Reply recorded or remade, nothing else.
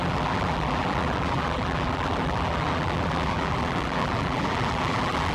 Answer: remade